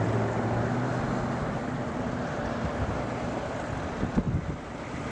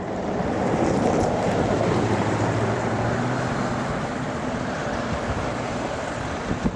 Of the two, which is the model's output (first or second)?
second